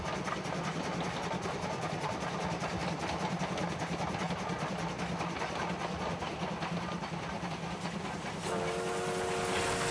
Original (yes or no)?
yes